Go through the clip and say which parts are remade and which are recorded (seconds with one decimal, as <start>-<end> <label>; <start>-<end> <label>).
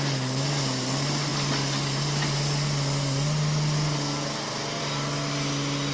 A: 0.0-5.9 recorded